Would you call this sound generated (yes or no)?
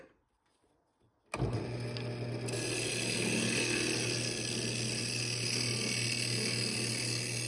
no